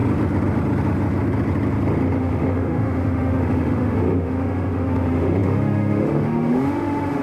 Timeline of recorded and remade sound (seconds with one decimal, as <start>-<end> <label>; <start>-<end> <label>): 0.0-2.2 recorded; 2.2-7.2 remade